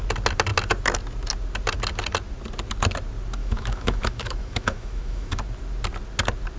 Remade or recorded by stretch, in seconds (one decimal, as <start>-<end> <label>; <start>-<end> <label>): 0.0-3.4 recorded; 3.4-5.4 remade; 5.4-6.6 recorded